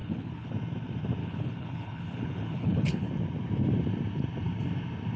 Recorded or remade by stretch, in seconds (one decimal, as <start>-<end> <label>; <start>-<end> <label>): 0.0-0.5 remade; 0.5-1.2 recorded; 1.2-3.1 remade; 3.1-5.2 recorded